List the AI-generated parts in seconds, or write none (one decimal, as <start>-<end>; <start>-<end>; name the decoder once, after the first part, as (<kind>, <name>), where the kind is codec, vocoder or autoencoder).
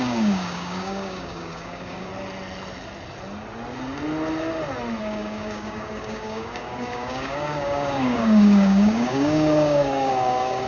0.0-2.1 (codec, DAC); 5.0-10.7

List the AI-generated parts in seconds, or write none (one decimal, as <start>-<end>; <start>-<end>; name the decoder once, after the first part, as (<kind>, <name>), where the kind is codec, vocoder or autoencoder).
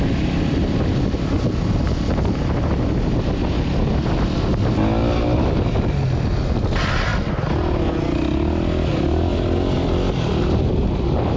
none